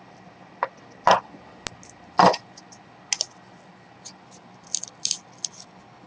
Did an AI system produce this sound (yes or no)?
no